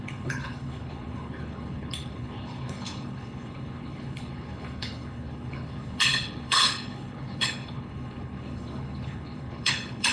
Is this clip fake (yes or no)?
yes